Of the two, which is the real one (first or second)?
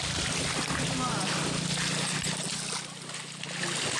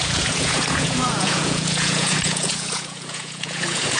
first